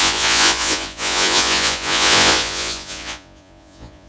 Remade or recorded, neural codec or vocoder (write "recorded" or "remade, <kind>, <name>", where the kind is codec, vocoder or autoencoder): remade, vocoder, Vocos